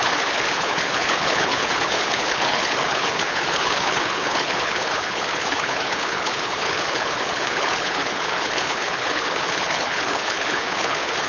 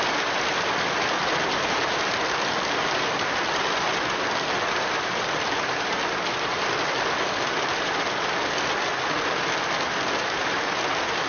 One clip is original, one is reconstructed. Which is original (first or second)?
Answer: second